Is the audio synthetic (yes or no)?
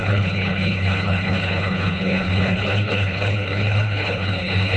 yes